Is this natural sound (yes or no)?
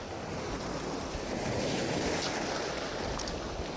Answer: yes